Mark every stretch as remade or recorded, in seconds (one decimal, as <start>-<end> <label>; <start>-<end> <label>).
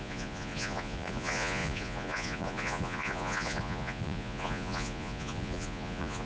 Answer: 0.0-6.3 remade